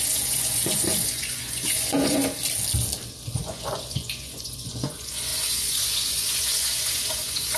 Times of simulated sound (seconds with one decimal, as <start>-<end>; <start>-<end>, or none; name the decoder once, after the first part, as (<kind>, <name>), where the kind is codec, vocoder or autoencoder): 0.0-2.2 (vocoder, Vocos); 3.4-7.6